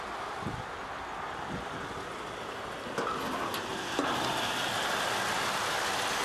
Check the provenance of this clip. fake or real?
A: real